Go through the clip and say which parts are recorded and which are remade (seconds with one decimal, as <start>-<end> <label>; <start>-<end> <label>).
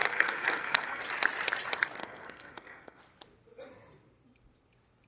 0.0-1.0 remade; 1.0-2.0 recorded; 2.0-3.0 remade; 3.0-5.1 recorded